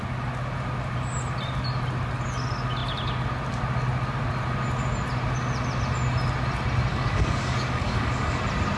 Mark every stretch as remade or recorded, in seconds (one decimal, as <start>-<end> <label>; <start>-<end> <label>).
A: 0.0-6.9 recorded; 6.9-8.4 remade; 8.4-8.8 recorded